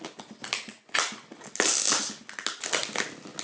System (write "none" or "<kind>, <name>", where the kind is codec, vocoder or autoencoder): none